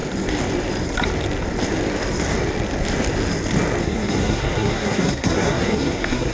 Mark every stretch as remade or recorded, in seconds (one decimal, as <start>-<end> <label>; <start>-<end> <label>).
0.0-3.8 recorded; 3.8-6.3 remade

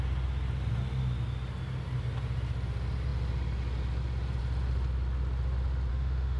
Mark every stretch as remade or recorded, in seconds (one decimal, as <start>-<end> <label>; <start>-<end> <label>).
0.0-5.9 recorded; 5.9-6.4 remade